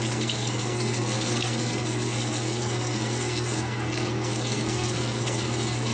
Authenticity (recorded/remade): remade